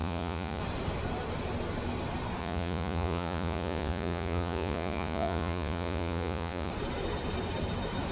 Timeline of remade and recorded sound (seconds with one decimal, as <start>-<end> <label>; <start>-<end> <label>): 0.0-0.6 remade; 0.6-2.4 recorded; 2.4-6.7 remade; 6.7-8.1 recorded